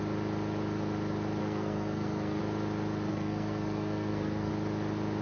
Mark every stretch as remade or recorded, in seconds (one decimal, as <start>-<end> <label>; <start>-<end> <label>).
0.0-1.4 recorded; 1.4-2.4 remade; 2.4-3.1 recorded; 3.1-4.5 remade; 4.5-5.2 recorded